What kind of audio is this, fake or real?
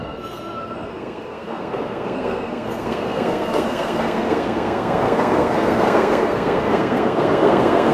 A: fake